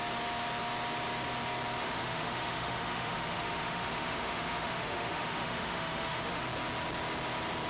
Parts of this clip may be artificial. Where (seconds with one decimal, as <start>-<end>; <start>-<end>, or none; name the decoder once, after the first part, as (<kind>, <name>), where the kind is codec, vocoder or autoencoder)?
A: 1.8-6.4 (autoencoder, DAC-VAE)